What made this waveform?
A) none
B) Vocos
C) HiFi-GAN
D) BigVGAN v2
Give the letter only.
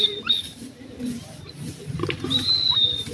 A